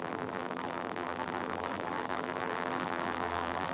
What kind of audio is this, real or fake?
fake